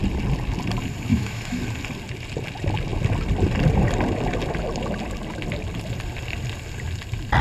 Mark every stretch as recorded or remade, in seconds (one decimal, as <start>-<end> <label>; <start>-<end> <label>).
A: 0.0-1.1 recorded; 1.1-1.6 remade; 1.6-7.4 recorded